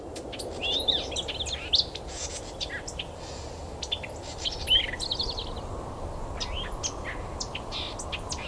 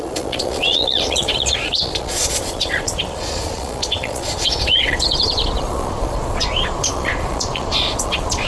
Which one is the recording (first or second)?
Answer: first